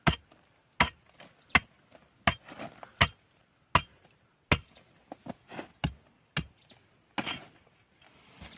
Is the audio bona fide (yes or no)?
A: yes